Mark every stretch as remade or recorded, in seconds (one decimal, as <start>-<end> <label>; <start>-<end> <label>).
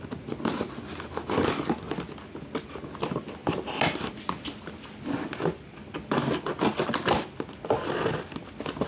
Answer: 0.0-8.9 recorded